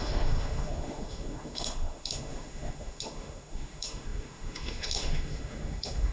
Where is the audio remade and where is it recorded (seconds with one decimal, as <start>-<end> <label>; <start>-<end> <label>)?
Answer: 0.0-6.1 remade